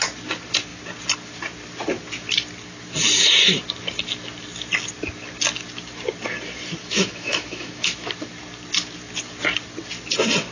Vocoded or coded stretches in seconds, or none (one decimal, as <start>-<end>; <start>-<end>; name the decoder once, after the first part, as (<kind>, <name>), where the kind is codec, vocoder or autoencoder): 6.8-8.1 (autoencoder, DAC-VAE)